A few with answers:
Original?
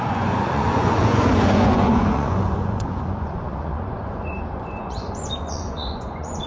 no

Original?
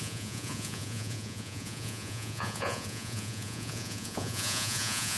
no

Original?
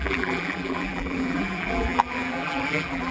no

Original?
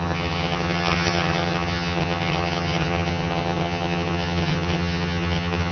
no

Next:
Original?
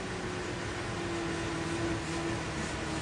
yes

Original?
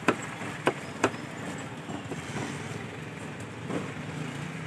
yes